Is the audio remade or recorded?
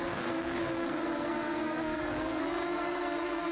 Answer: remade